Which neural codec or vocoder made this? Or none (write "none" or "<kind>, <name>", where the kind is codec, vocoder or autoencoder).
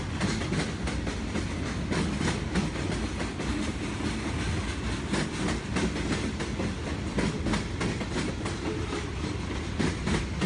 none